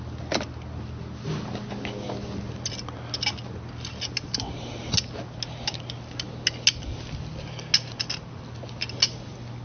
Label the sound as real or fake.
real